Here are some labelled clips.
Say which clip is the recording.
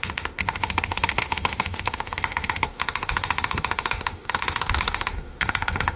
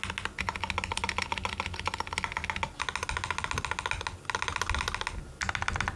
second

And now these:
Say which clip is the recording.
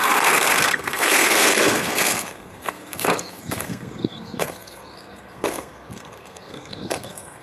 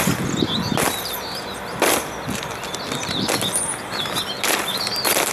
second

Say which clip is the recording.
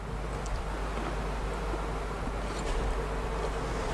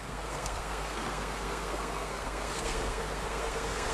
first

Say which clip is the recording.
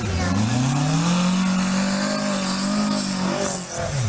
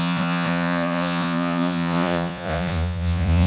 first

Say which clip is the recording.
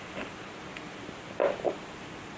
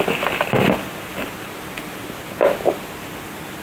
second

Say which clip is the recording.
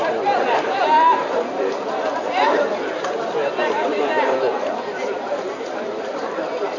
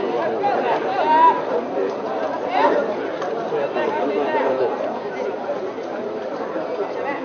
second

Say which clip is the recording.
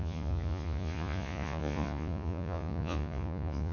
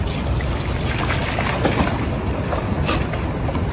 second